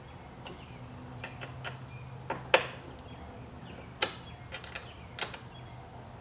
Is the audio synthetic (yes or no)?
no